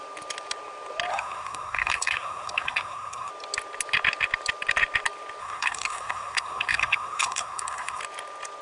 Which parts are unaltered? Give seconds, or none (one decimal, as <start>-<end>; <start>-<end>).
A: 0.0-1.1; 3.3-5.4; 8.0-8.6